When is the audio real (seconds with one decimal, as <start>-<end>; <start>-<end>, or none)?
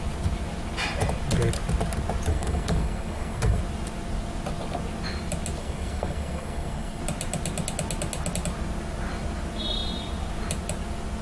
0.0-2.3; 3.6-5.6; 7.0-11.2